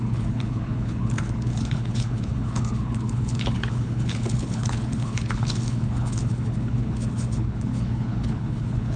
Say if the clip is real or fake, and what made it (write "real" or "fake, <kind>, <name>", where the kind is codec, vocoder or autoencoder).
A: fake, codec, HILCodec